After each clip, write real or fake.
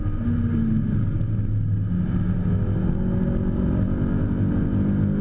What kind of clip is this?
real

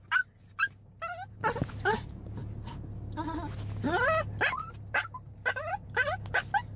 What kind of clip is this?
real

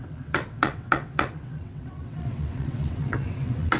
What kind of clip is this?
fake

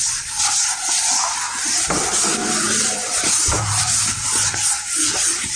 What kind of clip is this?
fake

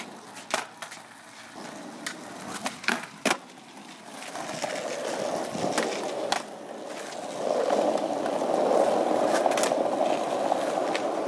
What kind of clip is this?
real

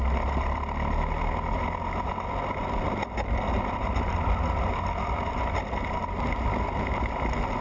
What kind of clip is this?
real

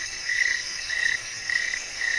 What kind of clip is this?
fake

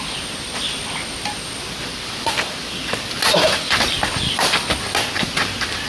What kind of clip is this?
real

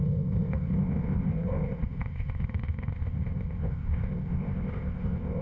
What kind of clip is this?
fake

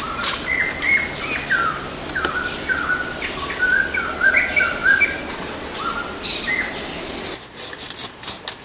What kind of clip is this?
real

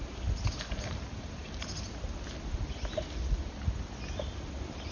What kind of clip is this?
real